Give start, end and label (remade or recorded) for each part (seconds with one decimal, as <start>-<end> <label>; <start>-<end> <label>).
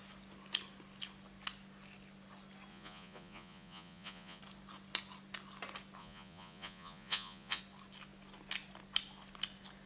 0.0-2.7 recorded; 2.7-4.4 remade; 4.4-6.0 recorded; 6.0-7.6 remade; 7.6-9.9 recorded